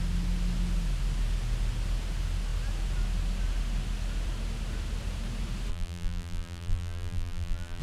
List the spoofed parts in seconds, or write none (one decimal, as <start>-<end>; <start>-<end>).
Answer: 5.7-7.8